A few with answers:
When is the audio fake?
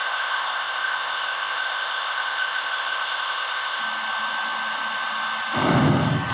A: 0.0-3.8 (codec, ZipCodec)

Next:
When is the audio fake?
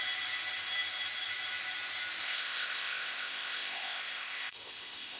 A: 2.2-5.2 (codec, ZipCodec)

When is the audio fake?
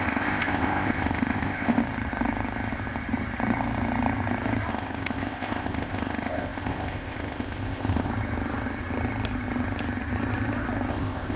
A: 0.0-1.8 (codec, ZipCodec); 4.7-8.1; 10.9-11.4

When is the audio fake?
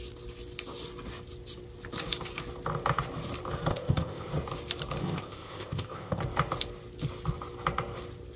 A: 3.7-4.3 (codec, ZipCodec); 5.0-6.2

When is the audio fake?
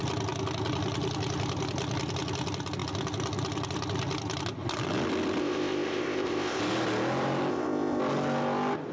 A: 5.4-6.6 (codec, ZipCodec); 7.5-8.0